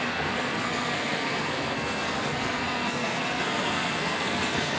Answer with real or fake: fake